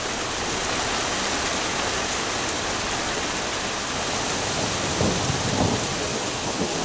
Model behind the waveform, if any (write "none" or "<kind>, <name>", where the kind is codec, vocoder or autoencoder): none